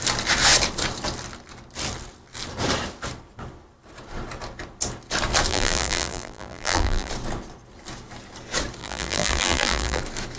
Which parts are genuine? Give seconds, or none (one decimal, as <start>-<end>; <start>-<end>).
0.0-5.5; 7.1-8.8; 10.0-10.4